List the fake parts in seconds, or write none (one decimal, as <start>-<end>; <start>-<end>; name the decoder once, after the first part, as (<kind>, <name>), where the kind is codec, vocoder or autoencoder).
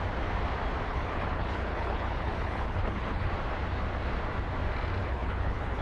0.9-3.3 (codec, HILCodec); 5.0-5.8